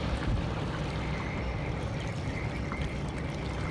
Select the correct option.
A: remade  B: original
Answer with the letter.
B